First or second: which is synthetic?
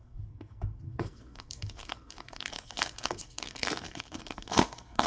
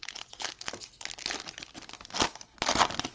first